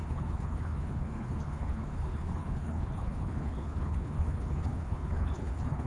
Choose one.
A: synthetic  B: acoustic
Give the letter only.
A